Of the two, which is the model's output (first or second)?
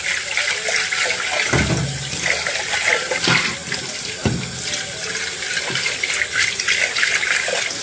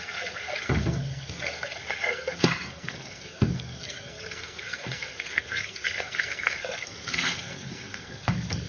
second